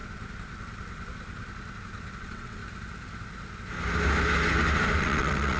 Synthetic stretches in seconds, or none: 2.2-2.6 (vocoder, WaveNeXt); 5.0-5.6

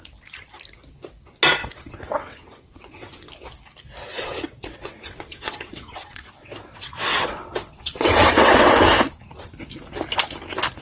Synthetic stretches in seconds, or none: 1.6-3.3 (vocoder, WaveNeXt); 4.1-8.7